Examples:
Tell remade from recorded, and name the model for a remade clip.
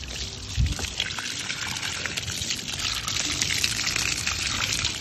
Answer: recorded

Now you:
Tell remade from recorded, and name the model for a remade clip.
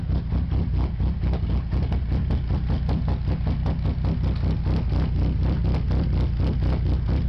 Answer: recorded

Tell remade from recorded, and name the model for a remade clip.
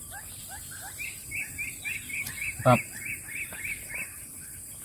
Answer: recorded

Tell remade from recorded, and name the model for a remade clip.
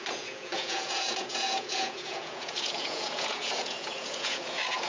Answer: remade, vocoder, Vocos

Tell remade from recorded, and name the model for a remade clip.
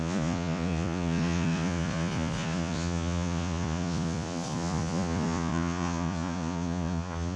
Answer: remade, vocoder, Vocos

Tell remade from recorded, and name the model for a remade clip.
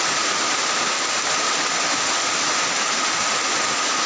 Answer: recorded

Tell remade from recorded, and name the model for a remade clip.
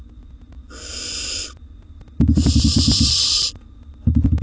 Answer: recorded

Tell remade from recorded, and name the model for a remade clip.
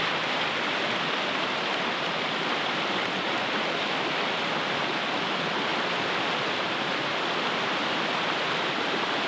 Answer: recorded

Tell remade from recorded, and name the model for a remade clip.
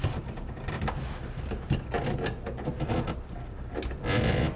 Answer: recorded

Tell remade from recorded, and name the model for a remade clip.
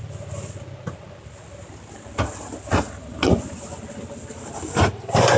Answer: recorded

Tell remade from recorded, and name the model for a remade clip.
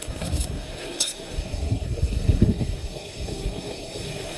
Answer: remade, codec, SNAC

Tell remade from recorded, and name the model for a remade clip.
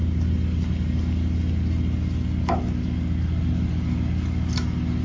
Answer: recorded